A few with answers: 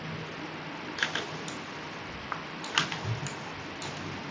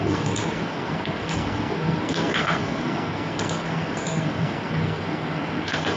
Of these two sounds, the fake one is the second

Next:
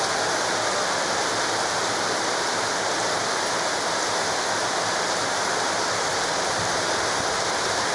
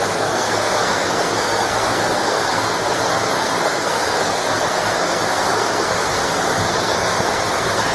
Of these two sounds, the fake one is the second